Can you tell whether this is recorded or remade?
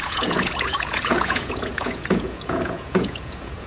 remade